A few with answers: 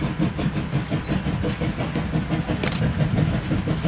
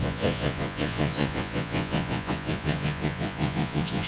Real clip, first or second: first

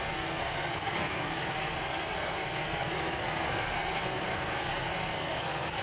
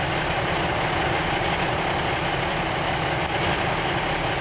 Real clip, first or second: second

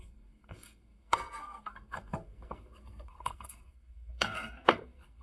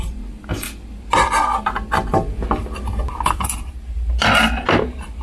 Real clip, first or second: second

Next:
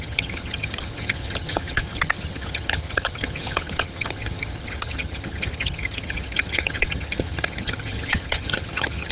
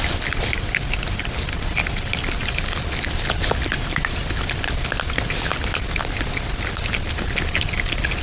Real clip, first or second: second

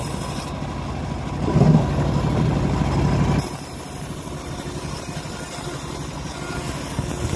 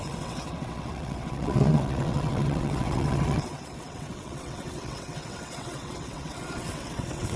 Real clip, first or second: first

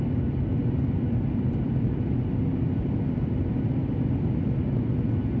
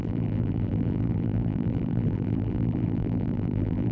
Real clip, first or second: first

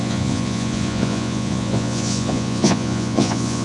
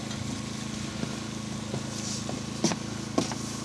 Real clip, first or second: second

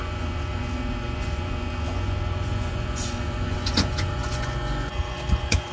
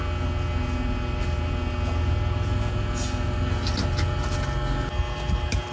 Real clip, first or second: second